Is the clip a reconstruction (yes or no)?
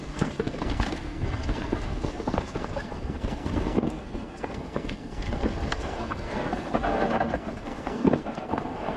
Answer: yes